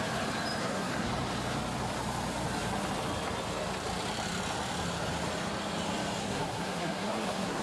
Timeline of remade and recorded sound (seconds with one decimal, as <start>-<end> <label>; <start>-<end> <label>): 0.0-0.6 recorded; 0.6-1.1 remade; 1.1-6.2 recorded; 6.2-7.6 remade